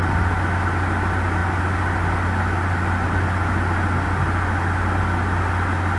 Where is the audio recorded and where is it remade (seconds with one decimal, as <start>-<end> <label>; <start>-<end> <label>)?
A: 0.0-6.0 recorded